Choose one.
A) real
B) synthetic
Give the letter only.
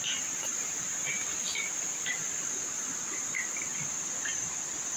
A